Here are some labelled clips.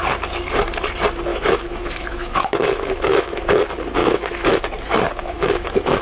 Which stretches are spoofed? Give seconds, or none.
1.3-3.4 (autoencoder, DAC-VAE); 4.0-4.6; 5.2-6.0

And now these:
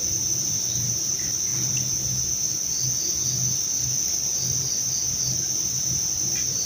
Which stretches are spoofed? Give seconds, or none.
0.0-1.5 (vocoder, BigVGAN v2); 5.5-6.7

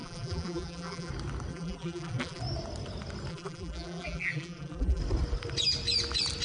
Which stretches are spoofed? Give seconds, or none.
0.0-1.1 (vocoder, BigVGAN v2); 1.5-2.4; 3.3-5.0